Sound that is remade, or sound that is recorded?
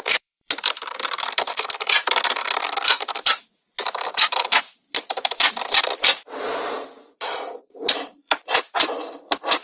remade